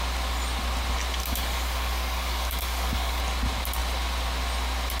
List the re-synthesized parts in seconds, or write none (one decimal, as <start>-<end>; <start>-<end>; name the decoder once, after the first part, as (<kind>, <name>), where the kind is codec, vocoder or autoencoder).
1.2-3.2 (codec, DAC)